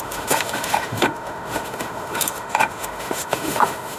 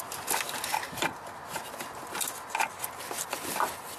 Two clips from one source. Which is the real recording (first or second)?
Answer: second